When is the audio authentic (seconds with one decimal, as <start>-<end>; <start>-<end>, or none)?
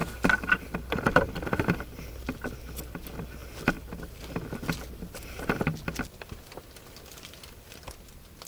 2.1-8.5